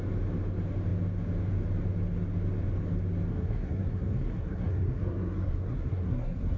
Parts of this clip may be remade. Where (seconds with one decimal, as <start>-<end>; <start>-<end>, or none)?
3.3-6.6